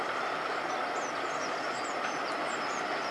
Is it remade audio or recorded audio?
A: recorded